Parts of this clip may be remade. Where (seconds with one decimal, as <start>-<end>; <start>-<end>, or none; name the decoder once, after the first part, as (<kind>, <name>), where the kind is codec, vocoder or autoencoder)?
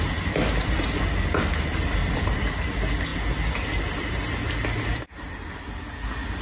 none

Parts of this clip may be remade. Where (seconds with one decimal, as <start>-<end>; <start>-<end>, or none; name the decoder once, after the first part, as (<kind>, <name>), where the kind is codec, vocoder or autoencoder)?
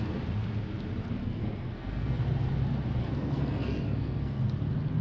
1.2-2.2 (codec, SNAC); 3.0-4.4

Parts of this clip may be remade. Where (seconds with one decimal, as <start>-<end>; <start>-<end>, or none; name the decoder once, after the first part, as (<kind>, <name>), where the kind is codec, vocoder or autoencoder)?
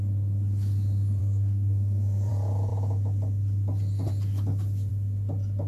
1.2-2.3 (codec, SNAC)